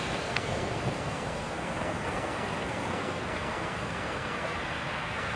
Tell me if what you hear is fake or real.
fake